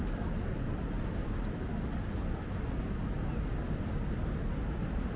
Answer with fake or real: real